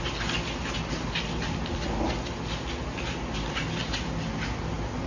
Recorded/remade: recorded